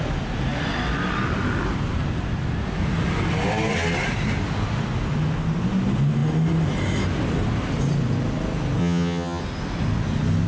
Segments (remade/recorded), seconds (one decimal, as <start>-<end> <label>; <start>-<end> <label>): 0.0-8.8 recorded; 8.8-9.4 remade; 9.4-10.5 recorded